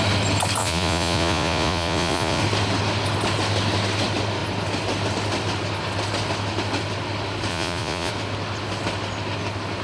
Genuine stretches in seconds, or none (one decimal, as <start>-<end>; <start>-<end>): 0.0-0.6; 2.4-7.5; 8.1-9.8